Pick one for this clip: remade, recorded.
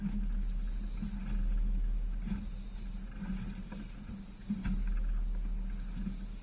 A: recorded